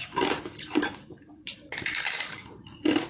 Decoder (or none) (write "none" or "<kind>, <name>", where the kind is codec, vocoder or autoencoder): vocoder, BigVGAN v2